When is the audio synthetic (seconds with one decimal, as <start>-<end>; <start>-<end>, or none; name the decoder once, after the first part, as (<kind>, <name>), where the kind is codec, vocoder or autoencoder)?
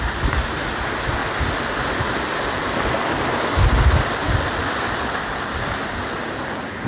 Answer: 1.2-5.3 (vocoder, BigVGAN v2)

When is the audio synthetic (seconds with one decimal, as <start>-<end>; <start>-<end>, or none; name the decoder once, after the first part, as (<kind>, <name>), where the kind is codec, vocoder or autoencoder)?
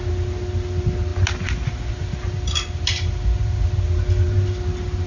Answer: none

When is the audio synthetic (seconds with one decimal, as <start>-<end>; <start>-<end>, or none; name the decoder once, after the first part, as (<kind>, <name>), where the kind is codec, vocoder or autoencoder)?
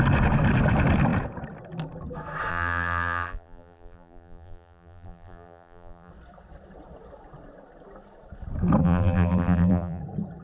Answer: 2.5-6.1 (vocoder, BigVGAN v2); 8.8-10.0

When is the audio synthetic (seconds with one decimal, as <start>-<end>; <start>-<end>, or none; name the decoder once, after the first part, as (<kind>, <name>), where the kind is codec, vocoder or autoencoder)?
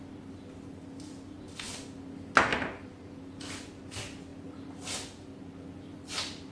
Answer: 2.5-3.1 (vocoder, BigVGAN v2)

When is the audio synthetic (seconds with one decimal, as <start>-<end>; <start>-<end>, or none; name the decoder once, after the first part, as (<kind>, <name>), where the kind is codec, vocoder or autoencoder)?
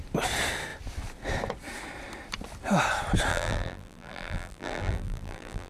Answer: 3.3-5.7 (vocoder, BigVGAN v2)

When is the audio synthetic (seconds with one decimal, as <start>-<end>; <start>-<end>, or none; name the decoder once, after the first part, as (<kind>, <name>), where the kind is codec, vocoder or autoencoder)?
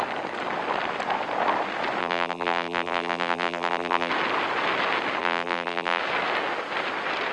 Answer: 2.0-4.1 (vocoder, BigVGAN v2); 5.2-6.0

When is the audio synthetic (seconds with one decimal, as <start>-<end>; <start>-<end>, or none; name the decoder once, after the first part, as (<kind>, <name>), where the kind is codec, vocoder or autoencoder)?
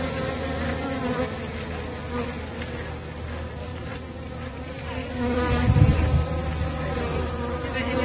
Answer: 3.7-4.5 (vocoder, BigVGAN v2)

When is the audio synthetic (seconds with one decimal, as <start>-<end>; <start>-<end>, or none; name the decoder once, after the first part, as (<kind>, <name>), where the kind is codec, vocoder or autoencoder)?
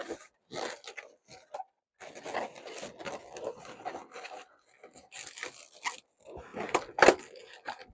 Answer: none